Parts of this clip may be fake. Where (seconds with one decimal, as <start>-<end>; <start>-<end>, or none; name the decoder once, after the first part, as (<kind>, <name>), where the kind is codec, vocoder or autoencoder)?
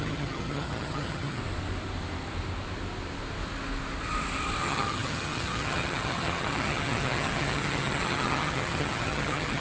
0.0-1.4 (vocoder, HiFi-GAN); 4.6-9.6